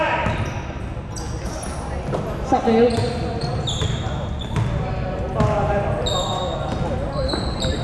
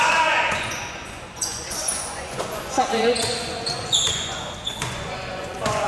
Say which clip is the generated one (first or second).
second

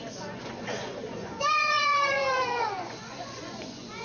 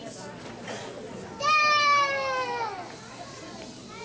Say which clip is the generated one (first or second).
first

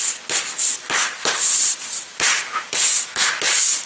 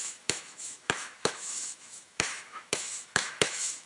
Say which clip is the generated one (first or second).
second